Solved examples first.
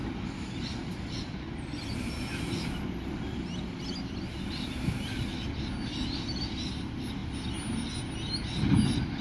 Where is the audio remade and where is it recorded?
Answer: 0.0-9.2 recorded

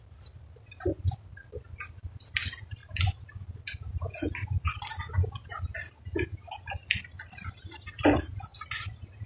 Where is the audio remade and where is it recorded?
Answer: 0.0-9.3 recorded

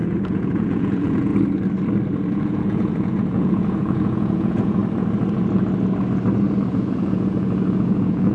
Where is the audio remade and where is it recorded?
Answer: 0.0-1.3 remade; 1.3-2.3 recorded; 2.3-4.8 remade; 4.8-6.7 recorded; 6.7-8.3 remade

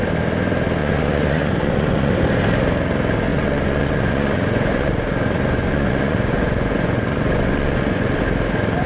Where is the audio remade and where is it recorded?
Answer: 0.0-0.8 recorded; 0.8-2.1 remade; 2.1-3.3 recorded; 3.3-8.2 remade; 8.2-8.9 recorded

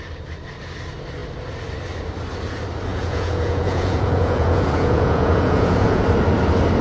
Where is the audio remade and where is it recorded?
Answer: 0.0-2.9 recorded; 2.9-6.0 remade; 6.0-6.8 recorded

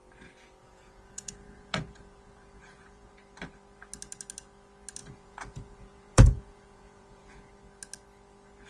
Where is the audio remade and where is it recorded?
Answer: 0.0-0.6 recorded; 0.6-3.1 remade; 3.1-5.0 recorded; 5.0-7.5 remade; 7.5-8.7 recorded